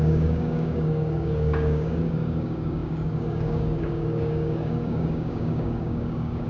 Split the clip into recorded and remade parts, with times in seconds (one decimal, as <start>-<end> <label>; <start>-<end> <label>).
0.0-6.5 remade